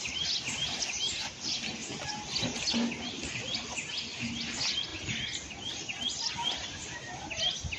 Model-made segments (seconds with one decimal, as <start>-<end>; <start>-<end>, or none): none